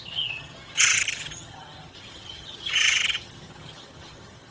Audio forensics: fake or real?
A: fake